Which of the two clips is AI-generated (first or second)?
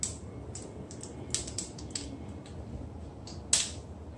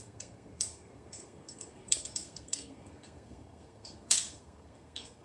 second